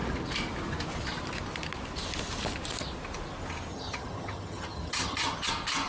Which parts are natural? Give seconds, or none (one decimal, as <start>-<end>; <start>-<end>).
0.0-3.7; 5.5-5.9